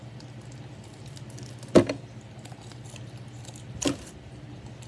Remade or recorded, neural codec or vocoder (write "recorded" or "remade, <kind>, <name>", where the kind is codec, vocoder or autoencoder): recorded